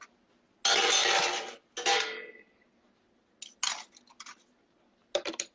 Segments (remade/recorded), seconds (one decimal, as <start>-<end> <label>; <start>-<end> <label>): 0.0-5.5 recorded